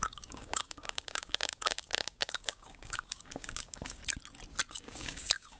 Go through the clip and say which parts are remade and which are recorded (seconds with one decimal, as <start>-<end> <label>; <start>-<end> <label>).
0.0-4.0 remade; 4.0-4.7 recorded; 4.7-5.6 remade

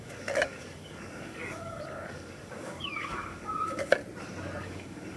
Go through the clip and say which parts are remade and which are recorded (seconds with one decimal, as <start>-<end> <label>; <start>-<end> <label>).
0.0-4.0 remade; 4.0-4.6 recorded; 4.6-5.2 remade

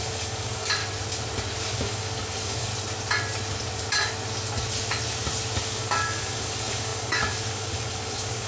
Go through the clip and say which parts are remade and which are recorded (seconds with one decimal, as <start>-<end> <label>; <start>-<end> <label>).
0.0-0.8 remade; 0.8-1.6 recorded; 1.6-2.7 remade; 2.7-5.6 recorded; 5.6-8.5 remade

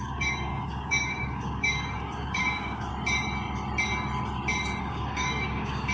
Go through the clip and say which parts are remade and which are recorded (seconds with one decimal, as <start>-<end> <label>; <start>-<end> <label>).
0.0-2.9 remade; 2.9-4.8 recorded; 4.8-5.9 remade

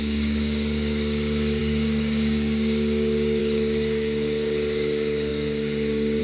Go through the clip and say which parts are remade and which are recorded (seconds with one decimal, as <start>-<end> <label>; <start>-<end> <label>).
0.0-6.2 remade